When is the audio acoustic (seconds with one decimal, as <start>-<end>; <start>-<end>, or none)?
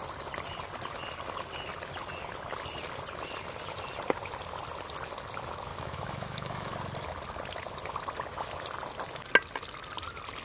0.0-5.7; 6.7-10.4